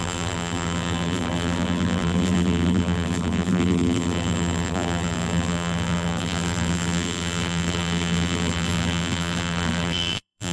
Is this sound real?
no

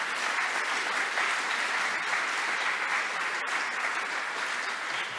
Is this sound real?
yes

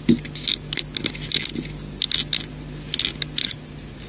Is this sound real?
yes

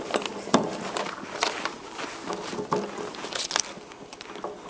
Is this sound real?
yes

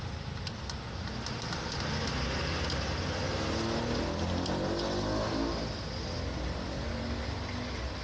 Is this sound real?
yes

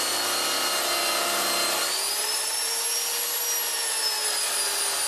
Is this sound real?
yes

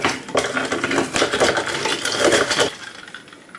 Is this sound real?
yes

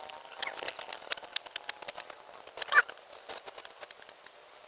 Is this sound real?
yes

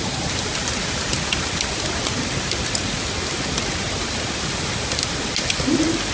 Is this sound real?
yes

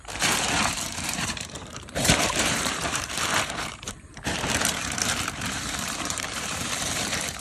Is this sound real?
no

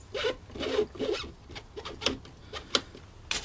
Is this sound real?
yes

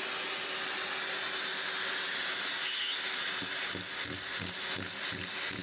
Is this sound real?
yes